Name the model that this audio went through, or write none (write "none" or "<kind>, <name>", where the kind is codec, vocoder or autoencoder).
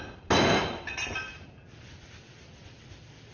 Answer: none